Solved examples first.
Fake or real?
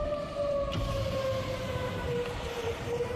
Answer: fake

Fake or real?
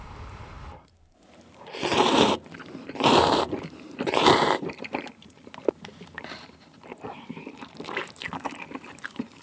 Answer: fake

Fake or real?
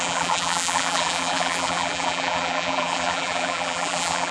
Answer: fake